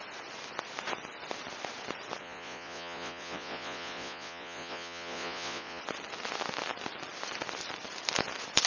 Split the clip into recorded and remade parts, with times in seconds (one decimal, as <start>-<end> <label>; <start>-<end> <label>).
0.0-2.2 recorded; 2.2-5.8 remade; 5.8-8.7 recorded